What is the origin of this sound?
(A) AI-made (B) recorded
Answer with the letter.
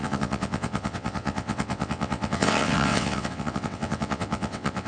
A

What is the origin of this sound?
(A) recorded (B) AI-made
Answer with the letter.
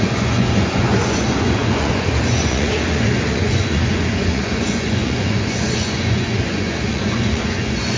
B